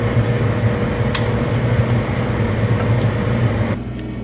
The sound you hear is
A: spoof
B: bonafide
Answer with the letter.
B